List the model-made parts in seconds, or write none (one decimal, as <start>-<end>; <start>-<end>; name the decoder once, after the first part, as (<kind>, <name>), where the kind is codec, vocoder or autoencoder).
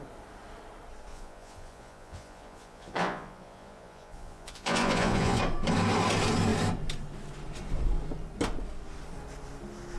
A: 1.1-5.4 (vocoder, Vocos)